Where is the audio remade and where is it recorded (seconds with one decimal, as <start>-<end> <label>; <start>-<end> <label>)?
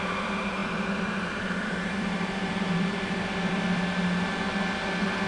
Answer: 0.0-0.6 recorded; 0.6-3.8 remade; 3.8-5.3 recorded